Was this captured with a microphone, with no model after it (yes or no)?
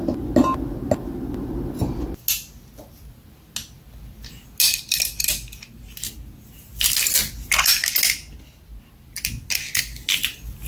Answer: yes